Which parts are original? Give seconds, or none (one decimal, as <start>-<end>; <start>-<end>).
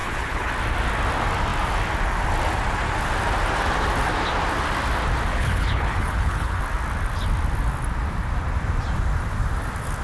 0.5-5.3; 6.6-10.0